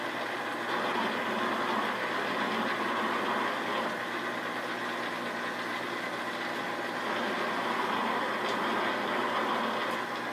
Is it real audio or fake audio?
real